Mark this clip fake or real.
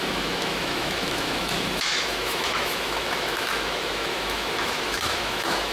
fake